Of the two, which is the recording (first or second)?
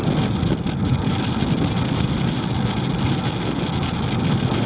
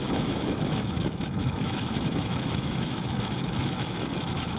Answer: first